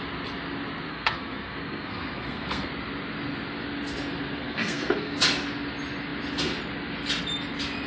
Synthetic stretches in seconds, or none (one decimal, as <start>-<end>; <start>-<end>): 0.9-2.7; 4.4-5.2